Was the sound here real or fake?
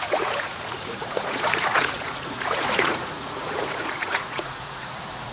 fake